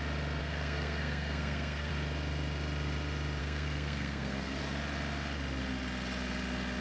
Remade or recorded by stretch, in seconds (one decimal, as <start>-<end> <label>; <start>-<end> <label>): 0.0-0.4 recorded; 0.4-1.9 remade; 1.9-3.4 recorded; 3.4-4.6 remade; 4.6-6.8 recorded